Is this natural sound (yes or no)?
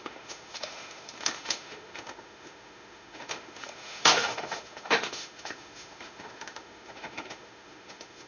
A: no